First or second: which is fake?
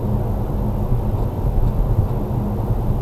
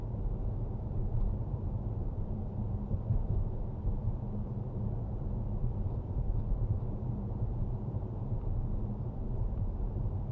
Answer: second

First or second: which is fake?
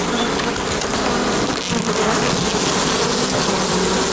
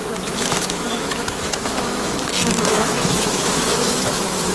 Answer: second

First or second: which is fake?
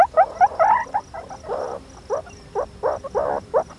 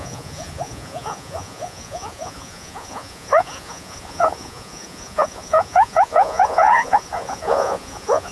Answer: second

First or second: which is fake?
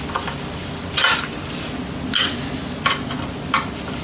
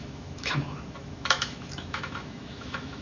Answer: second